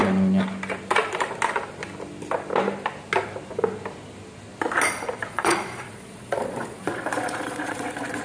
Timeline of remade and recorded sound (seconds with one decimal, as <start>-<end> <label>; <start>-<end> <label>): 0.0-5.3 recorded; 5.3-8.2 remade